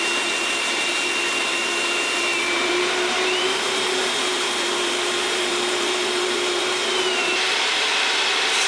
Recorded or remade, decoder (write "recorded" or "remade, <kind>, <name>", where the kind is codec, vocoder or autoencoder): remade, vocoder, BigVGAN v2